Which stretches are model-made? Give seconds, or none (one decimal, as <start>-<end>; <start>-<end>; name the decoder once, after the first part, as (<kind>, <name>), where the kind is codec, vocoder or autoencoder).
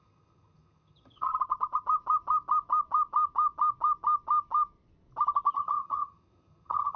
0.0-1.3 (vocoder, HiFi-GAN); 5.5-7.0